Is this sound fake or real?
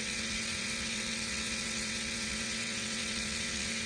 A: fake